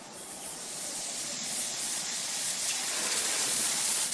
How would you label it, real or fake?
fake